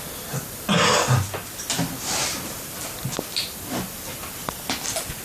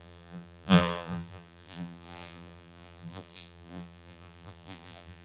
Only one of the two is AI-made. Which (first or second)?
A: second